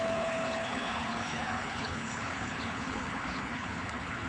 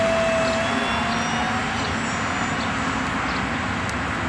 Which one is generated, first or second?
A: first